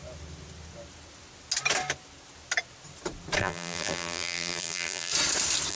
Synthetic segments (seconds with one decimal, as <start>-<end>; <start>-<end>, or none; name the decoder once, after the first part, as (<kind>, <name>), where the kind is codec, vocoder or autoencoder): 3.4-5.1 (vocoder, BigVGAN v2)